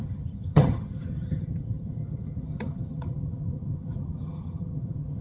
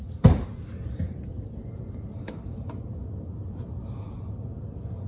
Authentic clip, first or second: second